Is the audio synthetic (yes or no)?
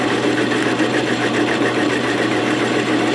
yes